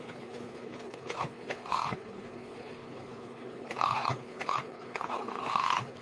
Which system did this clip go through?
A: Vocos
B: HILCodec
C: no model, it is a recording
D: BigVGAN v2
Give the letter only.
B